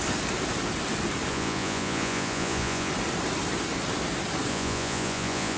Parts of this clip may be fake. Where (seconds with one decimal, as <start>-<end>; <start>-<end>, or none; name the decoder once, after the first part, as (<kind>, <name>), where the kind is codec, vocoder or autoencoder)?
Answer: 1.3-2.9 (vocoder, Vocos); 4.5-5.6